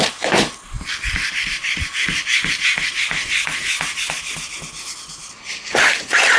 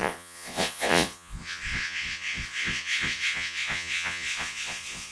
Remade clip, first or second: second